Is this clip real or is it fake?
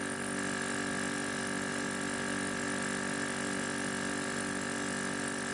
real